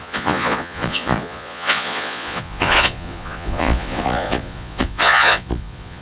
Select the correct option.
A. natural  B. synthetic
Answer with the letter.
B